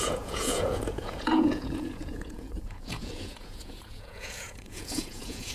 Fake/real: fake